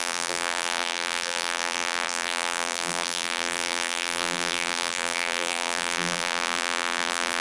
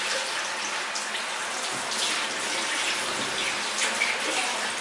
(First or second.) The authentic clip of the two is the second